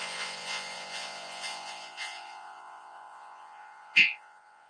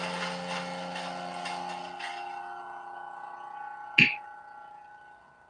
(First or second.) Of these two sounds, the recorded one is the second